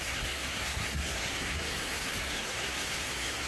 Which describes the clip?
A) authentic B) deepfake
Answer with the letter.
B